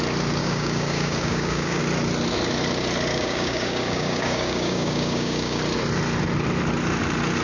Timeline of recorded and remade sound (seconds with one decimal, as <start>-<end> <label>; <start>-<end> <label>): 0.0-0.4 recorded; 0.4-1.8 remade; 1.8-3.1 recorded; 3.1-5.6 remade; 5.6-7.4 recorded